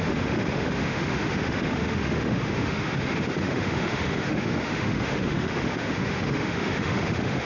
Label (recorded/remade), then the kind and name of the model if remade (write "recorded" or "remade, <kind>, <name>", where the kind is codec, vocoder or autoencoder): remade, autoencoder, DAC-VAE